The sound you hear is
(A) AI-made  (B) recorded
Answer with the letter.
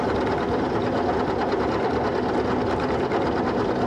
B